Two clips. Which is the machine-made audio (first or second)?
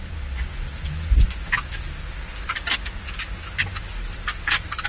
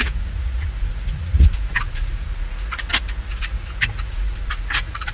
second